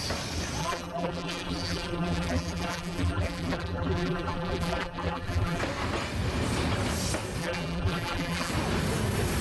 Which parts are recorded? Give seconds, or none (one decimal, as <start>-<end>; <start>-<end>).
0.0-0.6; 5.6-7.4; 8.5-9.4